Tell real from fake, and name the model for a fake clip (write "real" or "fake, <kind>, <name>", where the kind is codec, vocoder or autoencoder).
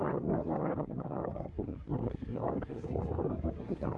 fake, codec, SNAC